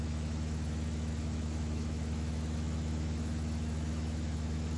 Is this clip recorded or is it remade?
remade